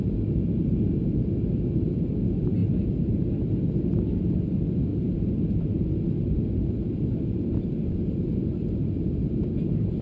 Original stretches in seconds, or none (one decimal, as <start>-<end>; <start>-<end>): 0.0-4.9; 9.3-10.0